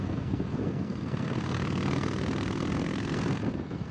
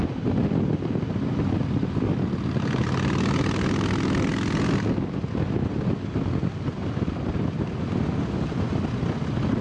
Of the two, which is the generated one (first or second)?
first